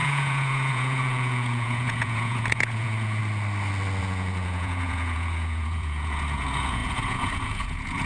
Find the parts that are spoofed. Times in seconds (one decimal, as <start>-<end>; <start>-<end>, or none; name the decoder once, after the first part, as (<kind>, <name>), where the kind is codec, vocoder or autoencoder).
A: 0.0-3.2 (vocoder, Vocos); 4.0-8.1